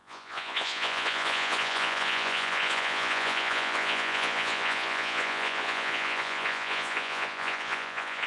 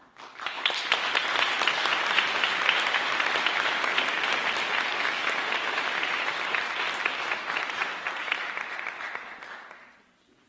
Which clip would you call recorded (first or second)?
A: second